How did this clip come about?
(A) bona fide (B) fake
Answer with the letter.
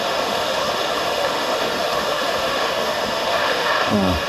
B